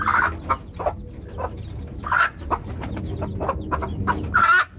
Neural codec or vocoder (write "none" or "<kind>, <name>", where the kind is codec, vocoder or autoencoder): none